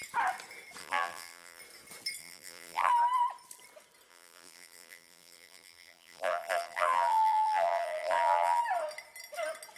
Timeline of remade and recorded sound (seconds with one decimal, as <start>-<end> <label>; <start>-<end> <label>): 0.0-0.8 recorded; 0.8-1.6 remade; 1.6-2.2 recorded; 2.2-2.9 remade; 2.9-4.1 recorded; 4.1-8.6 remade; 8.6-9.8 recorded